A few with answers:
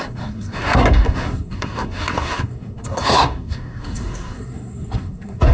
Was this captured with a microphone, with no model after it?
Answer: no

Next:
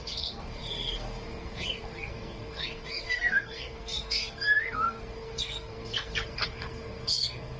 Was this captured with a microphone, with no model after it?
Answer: no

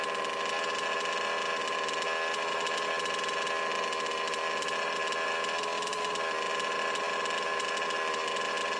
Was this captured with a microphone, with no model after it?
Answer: yes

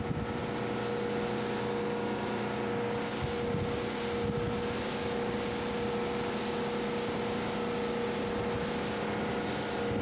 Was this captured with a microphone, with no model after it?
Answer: yes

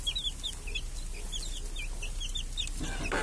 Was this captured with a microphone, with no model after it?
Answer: yes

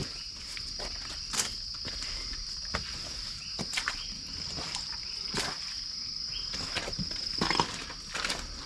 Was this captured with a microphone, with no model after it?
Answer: yes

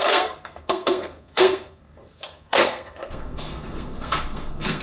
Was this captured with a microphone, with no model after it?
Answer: no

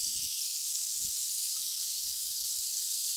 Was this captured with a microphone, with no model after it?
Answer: no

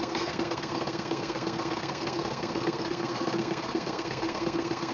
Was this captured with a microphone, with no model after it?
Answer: no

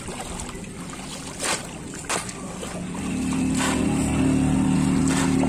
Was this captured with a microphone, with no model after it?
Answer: yes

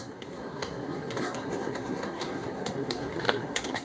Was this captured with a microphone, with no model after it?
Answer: no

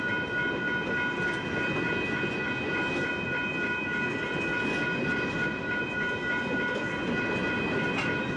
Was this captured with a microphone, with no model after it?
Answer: yes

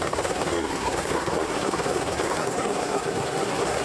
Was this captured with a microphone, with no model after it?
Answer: no